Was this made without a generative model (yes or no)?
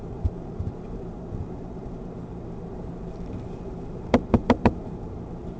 no